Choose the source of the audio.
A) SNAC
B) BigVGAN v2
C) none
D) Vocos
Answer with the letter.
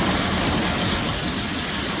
C